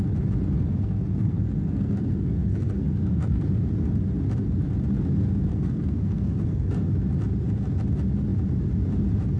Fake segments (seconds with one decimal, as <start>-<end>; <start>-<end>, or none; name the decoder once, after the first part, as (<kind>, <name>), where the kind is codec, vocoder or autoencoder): 0.6-3.5 (codec, SNAC); 5.5-6.9